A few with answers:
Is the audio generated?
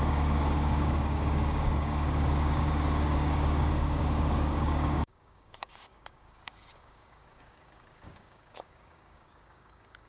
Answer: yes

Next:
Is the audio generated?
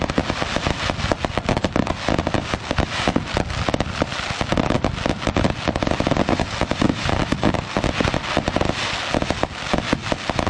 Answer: no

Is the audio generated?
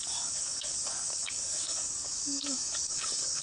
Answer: yes